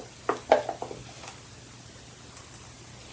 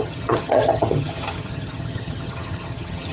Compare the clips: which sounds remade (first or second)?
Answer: second